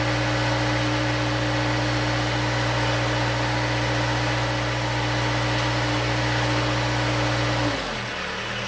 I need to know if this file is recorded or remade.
recorded